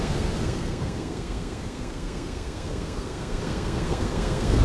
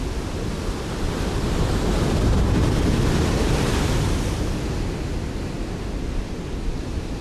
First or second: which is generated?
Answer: first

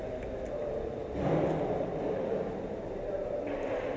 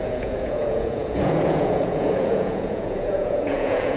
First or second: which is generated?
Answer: second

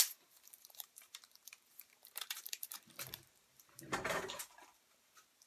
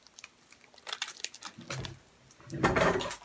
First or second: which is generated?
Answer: first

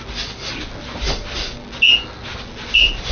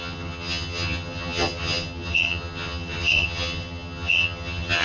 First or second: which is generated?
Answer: second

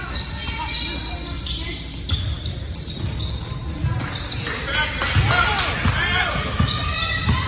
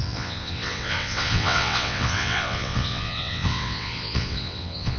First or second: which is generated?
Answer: second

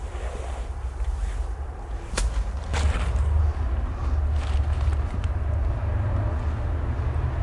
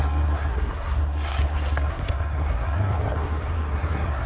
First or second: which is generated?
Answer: second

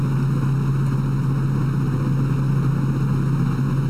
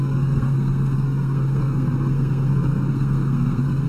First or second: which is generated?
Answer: second